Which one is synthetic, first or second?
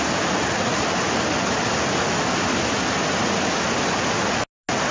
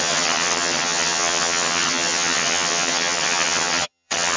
second